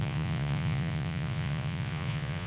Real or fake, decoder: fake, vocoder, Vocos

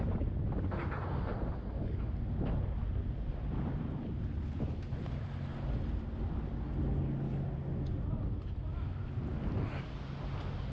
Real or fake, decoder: real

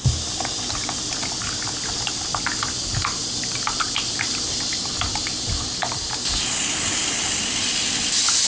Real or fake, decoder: fake, vocoder, BigVGAN v2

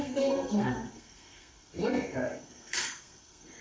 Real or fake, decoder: fake, codec, SNAC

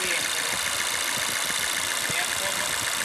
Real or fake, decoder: real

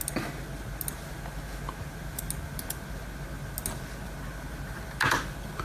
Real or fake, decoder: real